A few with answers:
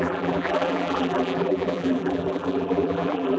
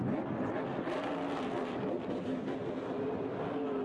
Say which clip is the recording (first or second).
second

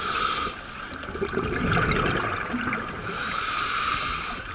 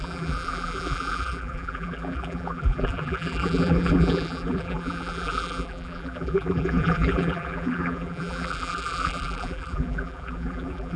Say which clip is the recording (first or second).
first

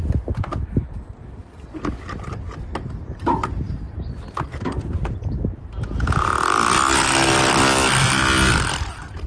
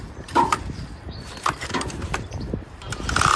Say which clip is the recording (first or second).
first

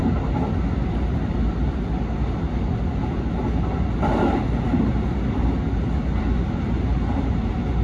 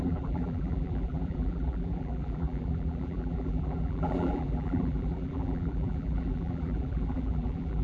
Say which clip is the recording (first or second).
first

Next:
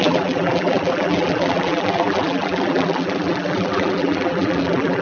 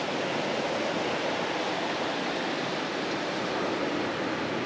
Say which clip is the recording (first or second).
second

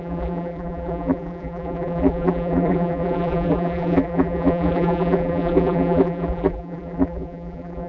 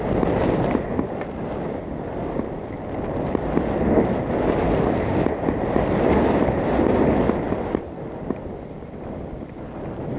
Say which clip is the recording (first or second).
second